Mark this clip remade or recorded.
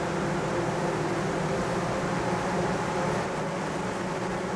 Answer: recorded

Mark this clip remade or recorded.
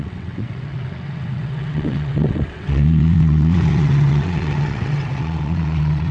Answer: remade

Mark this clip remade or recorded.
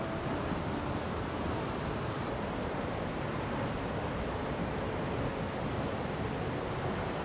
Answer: recorded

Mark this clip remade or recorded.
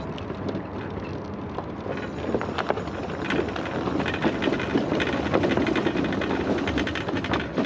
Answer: recorded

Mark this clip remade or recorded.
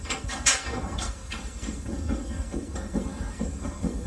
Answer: remade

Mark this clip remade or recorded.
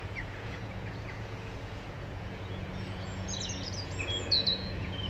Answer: remade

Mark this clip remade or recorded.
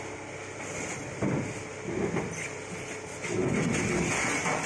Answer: recorded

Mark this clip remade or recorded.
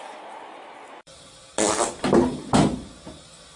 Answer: remade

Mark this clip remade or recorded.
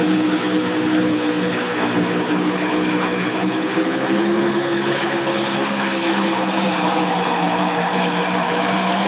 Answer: remade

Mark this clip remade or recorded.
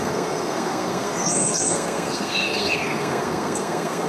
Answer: remade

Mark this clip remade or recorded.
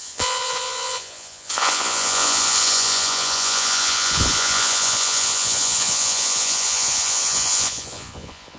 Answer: remade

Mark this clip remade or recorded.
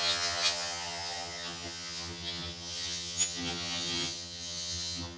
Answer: remade